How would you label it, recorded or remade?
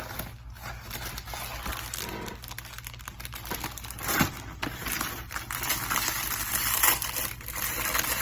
recorded